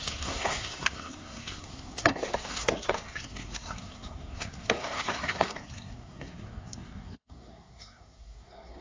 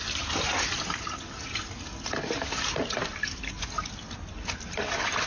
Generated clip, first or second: first